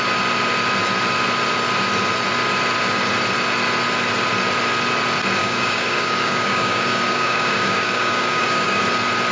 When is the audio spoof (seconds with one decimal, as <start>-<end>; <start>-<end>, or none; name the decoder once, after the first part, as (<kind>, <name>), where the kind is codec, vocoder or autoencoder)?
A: 5.4-8.8 (codec, DAC)